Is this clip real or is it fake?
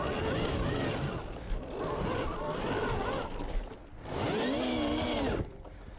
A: real